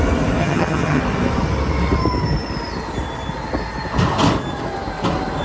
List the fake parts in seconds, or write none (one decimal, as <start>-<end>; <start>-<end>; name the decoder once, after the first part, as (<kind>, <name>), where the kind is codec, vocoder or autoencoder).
0.4-1.0 (vocoder, HiFi-GAN)